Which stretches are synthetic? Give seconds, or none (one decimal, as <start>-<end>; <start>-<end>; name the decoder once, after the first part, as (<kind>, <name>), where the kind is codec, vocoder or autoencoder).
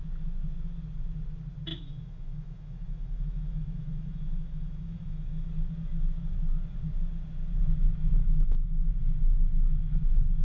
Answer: 1.7-5.5 (autoencoder, DAC-VAE); 8.2-8.9